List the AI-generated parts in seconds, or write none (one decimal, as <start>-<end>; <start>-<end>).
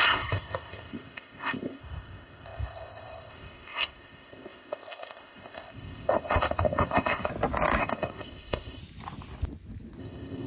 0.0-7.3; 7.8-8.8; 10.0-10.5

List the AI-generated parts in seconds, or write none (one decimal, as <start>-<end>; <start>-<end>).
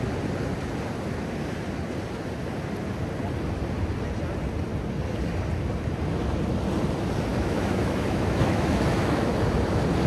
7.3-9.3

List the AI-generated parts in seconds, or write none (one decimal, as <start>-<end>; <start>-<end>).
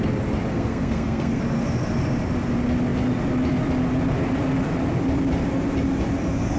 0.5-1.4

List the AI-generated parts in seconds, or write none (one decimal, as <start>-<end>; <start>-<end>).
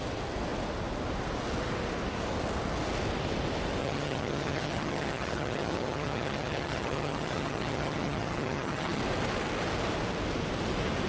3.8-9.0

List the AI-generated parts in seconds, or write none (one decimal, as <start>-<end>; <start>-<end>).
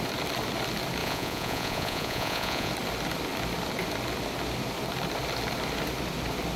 1.0-2.7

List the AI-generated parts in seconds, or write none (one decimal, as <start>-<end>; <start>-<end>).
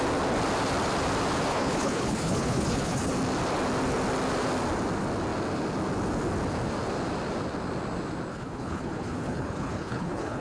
1.5-3.1; 8.3-10.4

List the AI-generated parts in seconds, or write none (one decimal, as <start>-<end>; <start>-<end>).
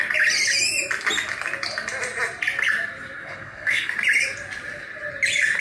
3.2-3.9